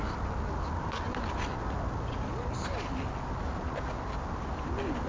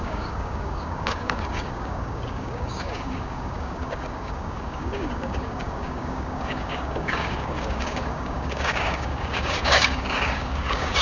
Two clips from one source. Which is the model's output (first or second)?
second